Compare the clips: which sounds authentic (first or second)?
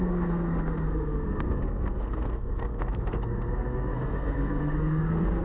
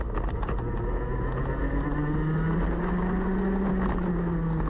second